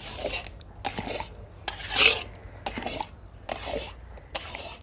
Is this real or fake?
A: real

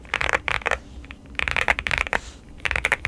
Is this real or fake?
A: fake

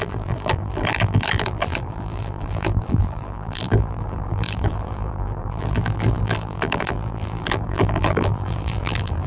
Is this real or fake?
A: fake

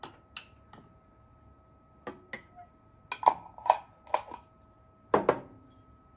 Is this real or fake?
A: real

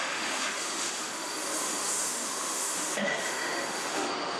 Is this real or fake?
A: fake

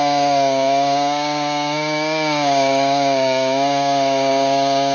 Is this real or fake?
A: fake